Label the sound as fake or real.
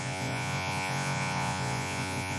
fake